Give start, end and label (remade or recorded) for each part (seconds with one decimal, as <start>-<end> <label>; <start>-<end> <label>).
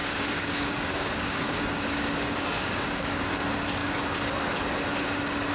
0.0-3.3 remade; 3.3-5.5 recorded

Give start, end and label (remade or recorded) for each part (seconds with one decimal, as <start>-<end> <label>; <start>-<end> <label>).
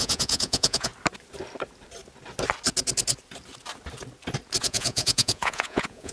0.0-0.9 remade; 0.9-4.6 recorded; 4.6-6.1 remade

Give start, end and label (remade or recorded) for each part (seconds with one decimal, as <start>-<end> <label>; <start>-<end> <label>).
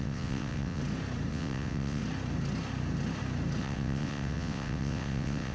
0.0-0.8 remade; 0.8-1.3 recorded; 1.3-2.0 remade; 2.0-3.6 recorded; 3.6-5.5 remade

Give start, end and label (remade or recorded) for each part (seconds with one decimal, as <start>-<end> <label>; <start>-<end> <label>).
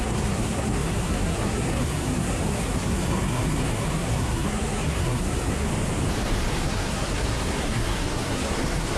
0.0-5.7 remade; 5.7-6.5 recorded; 6.5-9.0 remade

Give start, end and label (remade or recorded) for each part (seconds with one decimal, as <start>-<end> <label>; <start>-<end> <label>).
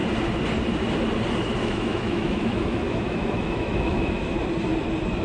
0.0-1.6 recorded; 1.6-4.3 remade; 4.3-5.2 recorded